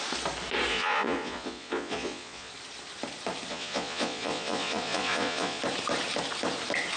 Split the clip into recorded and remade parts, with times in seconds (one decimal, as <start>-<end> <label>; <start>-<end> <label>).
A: 0.0-0.7 recorded; 0.7-2.5 remade; 2.5-3.5 recorded; 3.5-5.6 remade; 5.6-7.0 recorded